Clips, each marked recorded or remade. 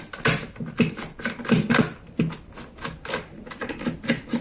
recorded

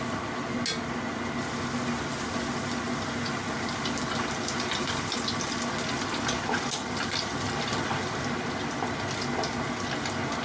recorded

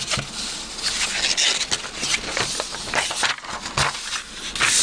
recorded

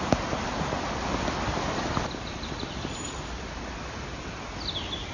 recorded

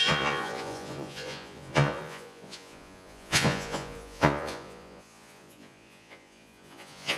remade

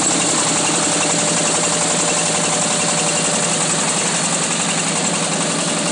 recorded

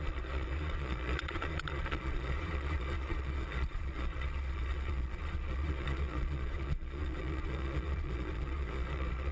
remade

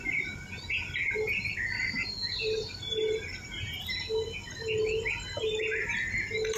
recorded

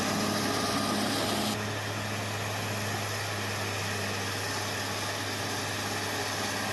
recorded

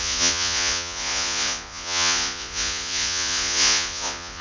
remade